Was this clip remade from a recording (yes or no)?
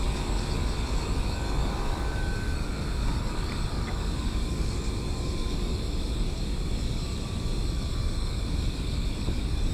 yes